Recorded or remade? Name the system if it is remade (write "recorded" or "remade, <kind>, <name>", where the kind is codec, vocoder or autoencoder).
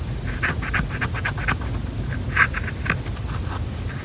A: recorded